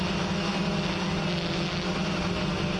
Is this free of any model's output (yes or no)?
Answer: yes